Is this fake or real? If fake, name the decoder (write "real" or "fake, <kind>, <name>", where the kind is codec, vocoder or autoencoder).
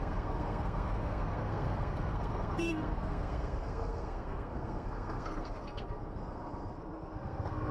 fake, codec, SNAC